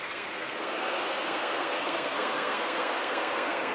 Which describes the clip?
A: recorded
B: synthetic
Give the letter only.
B